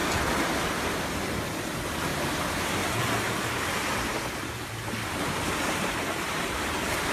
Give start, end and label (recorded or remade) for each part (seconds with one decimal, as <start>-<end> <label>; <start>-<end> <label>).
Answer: 0.0-2.1 recorded; 2.1-2.9 remade; 2.9-7.1 recorded